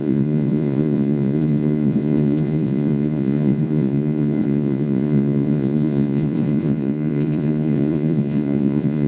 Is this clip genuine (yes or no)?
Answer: no